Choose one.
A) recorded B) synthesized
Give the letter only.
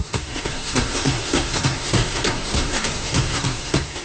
B